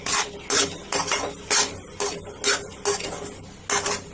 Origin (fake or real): real